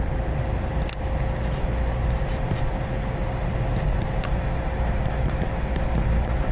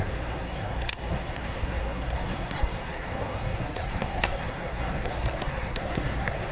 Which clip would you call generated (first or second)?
second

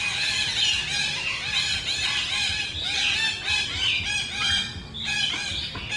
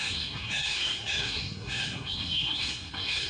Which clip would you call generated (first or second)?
second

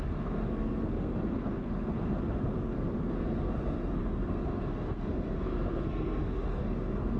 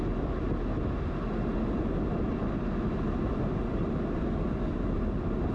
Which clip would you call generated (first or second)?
first